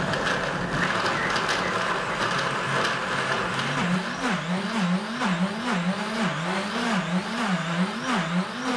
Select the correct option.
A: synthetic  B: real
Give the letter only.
B